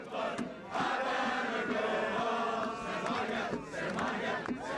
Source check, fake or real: real